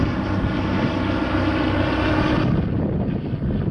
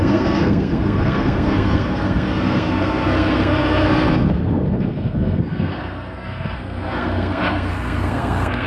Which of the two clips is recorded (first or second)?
first